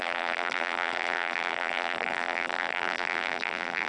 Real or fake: fake